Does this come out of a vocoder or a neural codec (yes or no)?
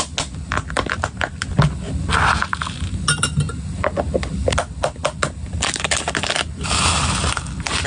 no